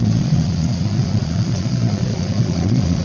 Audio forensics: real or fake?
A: fake